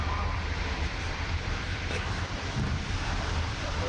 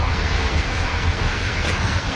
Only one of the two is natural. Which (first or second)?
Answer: first